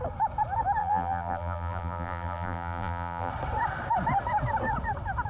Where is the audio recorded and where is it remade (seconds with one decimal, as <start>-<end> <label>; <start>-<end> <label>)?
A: 0.0-0.8 recorded; 0.8-3.3 remade; 3.3-5.3 recorded